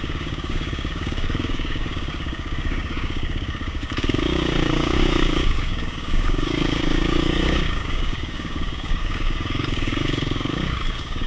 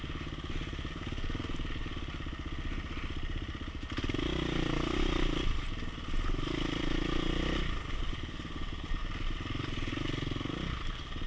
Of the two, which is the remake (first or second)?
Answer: first